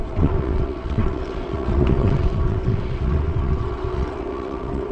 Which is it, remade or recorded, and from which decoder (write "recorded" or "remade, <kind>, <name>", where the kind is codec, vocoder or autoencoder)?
remade, vocoder, WaveNeXt